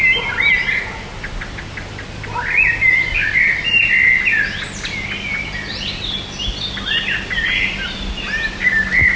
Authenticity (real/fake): real